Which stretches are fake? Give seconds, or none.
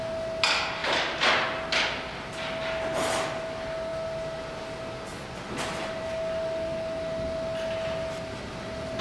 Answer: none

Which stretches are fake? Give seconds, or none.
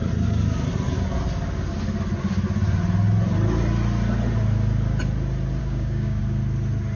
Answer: 5.6-6.2 (codec, DAC)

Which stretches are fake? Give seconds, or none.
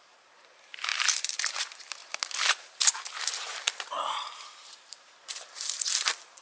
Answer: 0.0-2.0 (vocoder, BigVGAN v2); 2.5-6.4